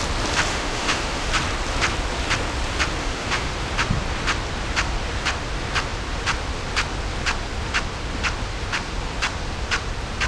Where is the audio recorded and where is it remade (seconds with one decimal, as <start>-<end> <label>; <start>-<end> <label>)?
0.0-0.5 recorded; 0.5-1.3 remade; 1.3-3.0 recorded; 3.0-3.5 remade; 3.5-10.3 recorded